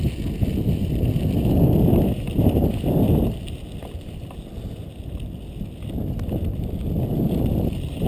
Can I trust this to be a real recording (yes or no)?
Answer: yes